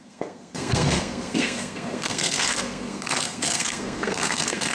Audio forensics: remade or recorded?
remade